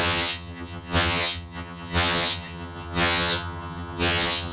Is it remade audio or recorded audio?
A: remade